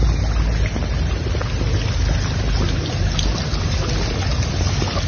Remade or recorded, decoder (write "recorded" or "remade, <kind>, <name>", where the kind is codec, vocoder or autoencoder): recorded